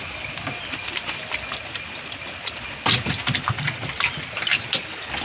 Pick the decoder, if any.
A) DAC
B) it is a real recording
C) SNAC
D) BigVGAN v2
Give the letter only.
B